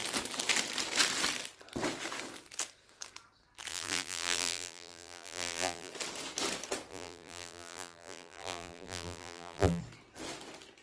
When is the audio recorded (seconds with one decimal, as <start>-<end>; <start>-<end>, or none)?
0.0-3.7; 5.9-6.9; 9.8-10.8